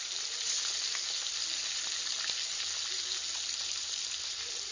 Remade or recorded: recorded